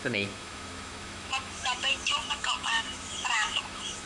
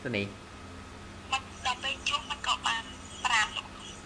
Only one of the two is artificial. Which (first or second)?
first